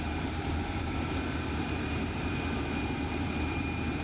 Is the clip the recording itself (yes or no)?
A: no